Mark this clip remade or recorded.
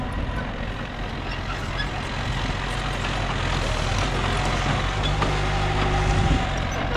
recorded